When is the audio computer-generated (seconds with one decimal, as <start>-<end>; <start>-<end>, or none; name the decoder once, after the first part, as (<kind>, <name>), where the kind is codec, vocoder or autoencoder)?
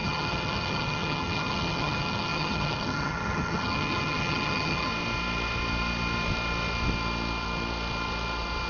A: 0.0-4.9 (vocoder, HiFi-GAN)